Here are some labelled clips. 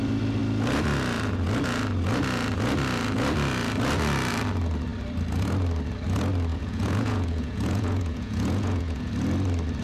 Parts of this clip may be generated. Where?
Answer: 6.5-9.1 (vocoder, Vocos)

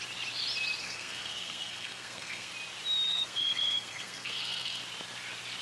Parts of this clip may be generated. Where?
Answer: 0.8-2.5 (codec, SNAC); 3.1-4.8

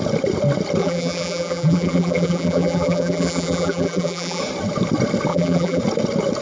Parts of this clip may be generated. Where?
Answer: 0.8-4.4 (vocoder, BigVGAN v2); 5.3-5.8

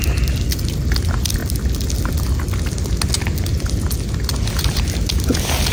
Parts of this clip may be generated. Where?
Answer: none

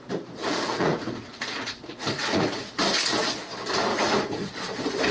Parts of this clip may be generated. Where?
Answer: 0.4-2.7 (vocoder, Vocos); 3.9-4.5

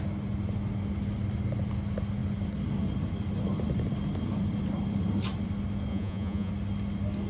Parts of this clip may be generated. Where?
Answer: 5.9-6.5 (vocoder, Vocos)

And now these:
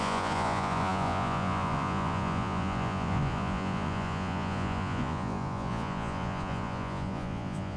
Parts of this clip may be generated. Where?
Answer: 0.0-7.8 (vocoder, Vocos)

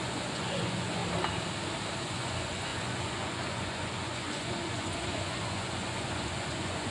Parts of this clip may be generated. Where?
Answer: 0.0-1.0 (vocoder, Vocos); 2.0-6.9